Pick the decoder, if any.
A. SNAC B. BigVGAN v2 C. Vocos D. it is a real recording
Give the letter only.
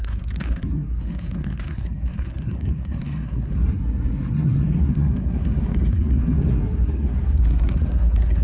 A